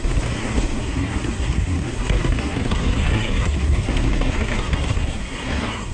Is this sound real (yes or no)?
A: no